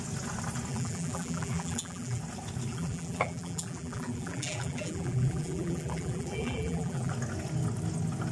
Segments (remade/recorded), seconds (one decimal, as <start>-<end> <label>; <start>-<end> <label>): 0.0-0.7 recorded; 0.7-2.2 remade; 2.2-2.7 recorded; 2.7-7.1 remade; 7.1-8.3 recorded